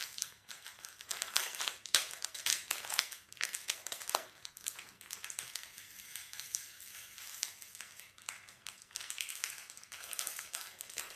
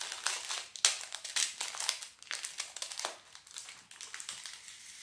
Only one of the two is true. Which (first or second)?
second